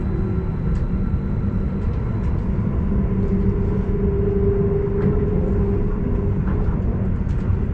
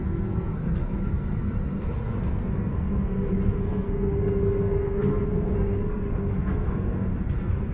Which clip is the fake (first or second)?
second